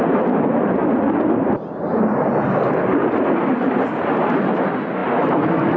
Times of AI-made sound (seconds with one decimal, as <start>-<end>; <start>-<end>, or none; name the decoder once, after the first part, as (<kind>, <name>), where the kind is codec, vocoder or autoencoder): none